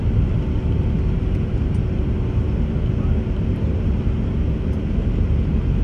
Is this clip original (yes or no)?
yes